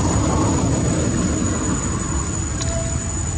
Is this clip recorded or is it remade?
recorded